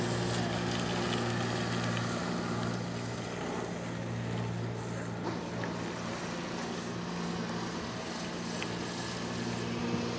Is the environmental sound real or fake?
real